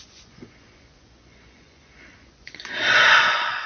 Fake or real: fake